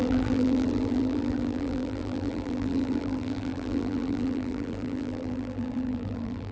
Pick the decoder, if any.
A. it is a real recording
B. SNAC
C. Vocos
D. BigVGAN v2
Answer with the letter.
D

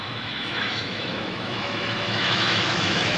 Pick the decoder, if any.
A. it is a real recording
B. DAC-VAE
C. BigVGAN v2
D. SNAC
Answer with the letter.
B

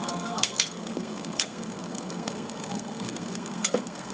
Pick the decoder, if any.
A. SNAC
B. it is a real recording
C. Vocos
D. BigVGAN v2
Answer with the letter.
A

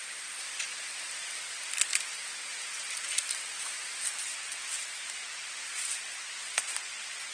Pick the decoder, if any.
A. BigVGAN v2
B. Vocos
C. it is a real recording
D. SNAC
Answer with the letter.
C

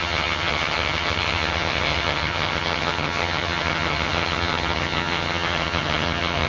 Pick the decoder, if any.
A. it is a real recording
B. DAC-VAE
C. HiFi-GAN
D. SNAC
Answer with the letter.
C